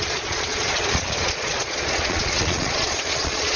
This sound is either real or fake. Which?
fake